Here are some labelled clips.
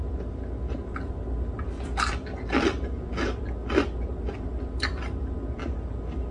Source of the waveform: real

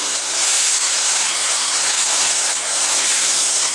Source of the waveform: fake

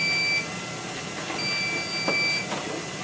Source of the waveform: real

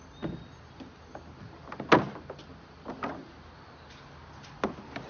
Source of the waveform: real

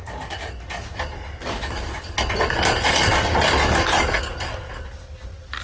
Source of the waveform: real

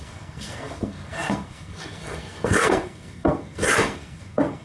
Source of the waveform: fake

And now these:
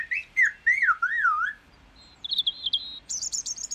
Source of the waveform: fake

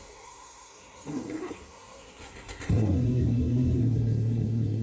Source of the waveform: fake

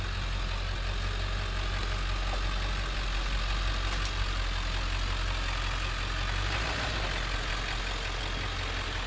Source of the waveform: real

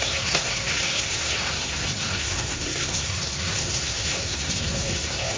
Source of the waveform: fake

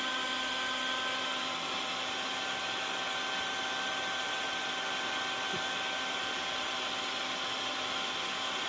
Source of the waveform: real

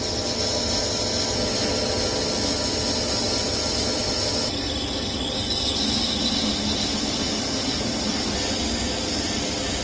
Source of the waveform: real